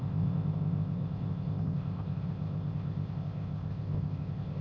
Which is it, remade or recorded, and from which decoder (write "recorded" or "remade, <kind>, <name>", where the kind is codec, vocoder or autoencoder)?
remade, codec, ZipCodec